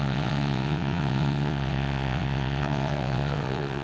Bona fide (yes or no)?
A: no